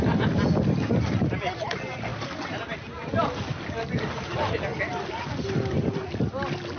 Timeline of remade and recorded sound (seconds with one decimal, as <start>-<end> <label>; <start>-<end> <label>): 0.0-6.8 recorded

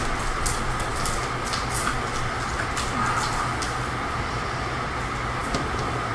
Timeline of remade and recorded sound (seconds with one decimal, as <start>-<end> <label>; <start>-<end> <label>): 0.0-6.1 recorded

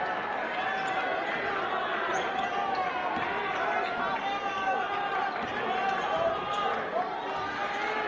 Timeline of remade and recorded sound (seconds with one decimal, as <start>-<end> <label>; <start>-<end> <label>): 0.0-8.1 recorded

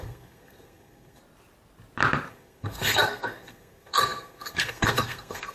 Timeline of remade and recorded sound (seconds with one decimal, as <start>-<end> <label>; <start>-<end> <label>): 0.0-1.2 remade; 1.2-2.3 recorded; 2.3-5.5 remade

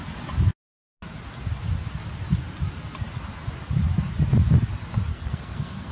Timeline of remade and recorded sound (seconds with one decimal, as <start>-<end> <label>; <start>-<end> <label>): 0.0-5.1 recorded; 5.1-5.9 remade